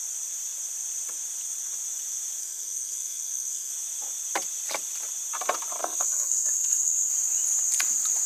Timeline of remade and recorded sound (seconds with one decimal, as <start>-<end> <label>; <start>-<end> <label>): 0.0-2.4 recorded; 2.4-3.7 remade; 3.7-5.8 recorded; 5.8-7.1 remade; 7.1-8.3 recorded